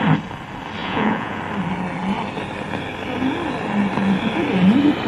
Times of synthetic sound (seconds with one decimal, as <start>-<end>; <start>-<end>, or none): 0.8-1.4